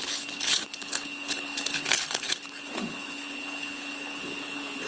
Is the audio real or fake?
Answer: fake